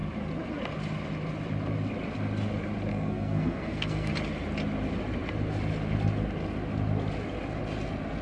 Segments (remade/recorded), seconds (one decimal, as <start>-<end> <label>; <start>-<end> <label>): 0.0-2.9 recorded; 2.9-4.1 remade; 4.1-8.2 recorded